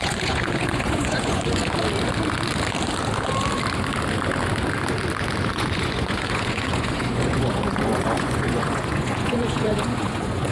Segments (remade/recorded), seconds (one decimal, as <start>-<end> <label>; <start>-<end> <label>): 0.0-1.6 remade; 1.6-5.5 recorded; 5.5-10.5 remade